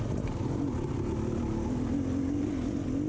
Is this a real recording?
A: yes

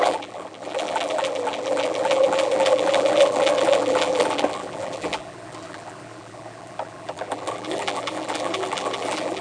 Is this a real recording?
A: no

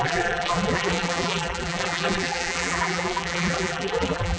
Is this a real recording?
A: no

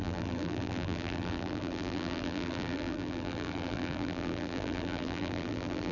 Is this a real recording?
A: no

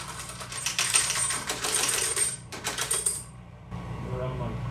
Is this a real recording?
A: no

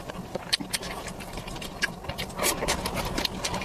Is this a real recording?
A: yes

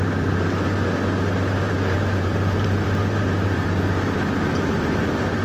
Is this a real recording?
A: no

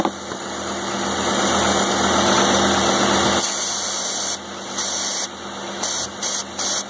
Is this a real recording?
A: yes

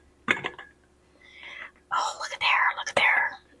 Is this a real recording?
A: yes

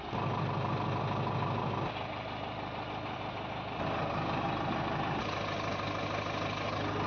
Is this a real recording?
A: yes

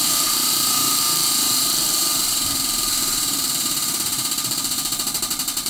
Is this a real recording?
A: no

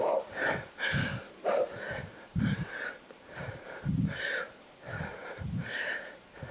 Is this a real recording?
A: no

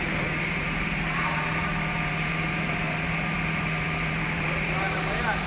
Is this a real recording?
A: no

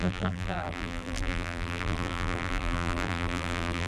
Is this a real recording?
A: no